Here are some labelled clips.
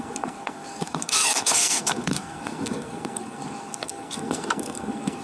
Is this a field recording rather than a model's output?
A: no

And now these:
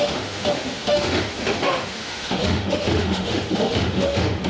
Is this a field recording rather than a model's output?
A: no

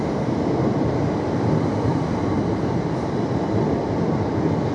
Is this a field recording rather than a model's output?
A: no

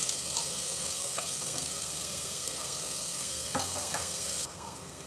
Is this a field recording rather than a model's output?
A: no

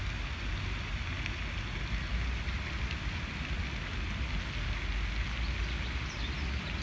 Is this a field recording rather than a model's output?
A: yes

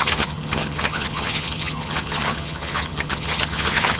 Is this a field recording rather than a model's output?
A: no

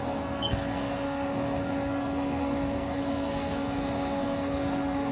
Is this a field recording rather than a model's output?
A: no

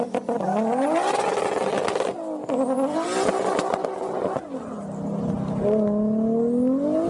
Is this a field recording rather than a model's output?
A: yes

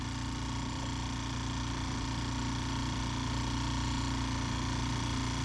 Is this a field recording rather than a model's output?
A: yes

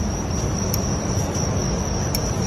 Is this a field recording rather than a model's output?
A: yes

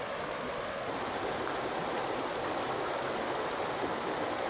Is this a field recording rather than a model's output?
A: yes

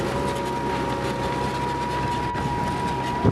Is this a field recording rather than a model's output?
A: yes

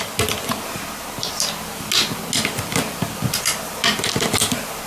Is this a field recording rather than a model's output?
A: yes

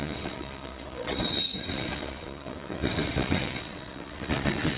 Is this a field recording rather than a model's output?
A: no